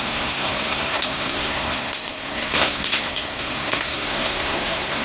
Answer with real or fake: fake